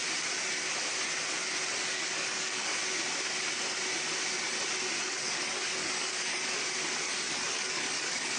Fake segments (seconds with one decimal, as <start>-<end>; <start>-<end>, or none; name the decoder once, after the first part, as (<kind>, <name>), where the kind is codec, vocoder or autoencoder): 1.8-2.7 (codec, DAC); 5.0-6.4; 7.0-8.4